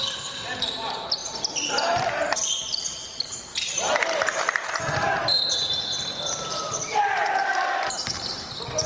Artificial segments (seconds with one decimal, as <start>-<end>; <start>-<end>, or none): 1.2-4.8; 7.4-8.5